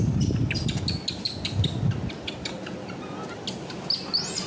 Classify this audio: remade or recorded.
recorded